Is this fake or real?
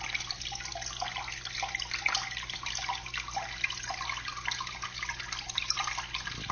real